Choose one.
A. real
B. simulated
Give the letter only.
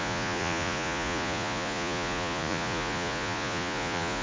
B